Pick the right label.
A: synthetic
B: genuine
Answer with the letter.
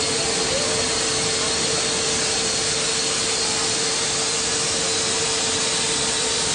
B